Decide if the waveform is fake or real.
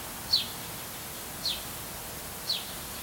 real